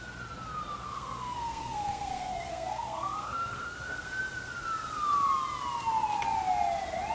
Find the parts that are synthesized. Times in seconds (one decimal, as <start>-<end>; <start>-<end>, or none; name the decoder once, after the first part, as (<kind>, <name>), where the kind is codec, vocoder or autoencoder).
0.8-4.1 (codec, SNAC)